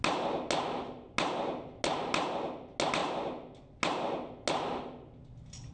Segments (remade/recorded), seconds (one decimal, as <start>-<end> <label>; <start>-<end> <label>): 0.0-5.7 recorded